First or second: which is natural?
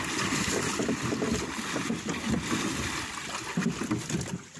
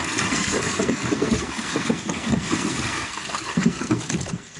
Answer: first